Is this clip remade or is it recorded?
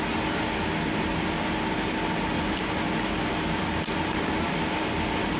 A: recorded